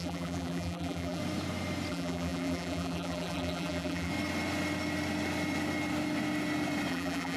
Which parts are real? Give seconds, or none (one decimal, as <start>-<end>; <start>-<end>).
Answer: 1.2-1.9; 4.1-6.9